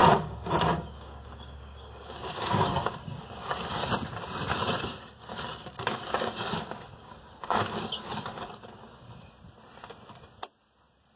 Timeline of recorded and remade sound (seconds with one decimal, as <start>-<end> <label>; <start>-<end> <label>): 0.0-3.9 remade; 3.9-4.5 recorded; 4.5-9.3 remade; 9.3-11.2 recorded